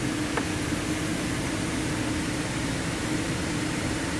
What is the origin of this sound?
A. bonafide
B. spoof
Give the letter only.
A